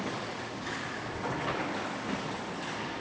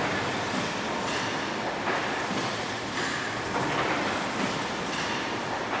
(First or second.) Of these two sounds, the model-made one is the first